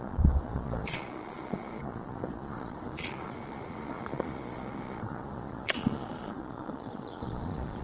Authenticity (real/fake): fake